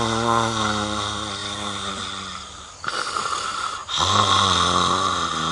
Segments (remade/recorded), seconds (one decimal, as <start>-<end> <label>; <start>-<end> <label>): 0.0-5.5 recorded